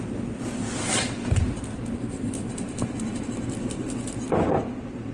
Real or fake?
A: real